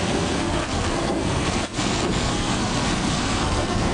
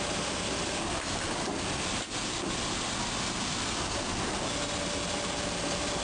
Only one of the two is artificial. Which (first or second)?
first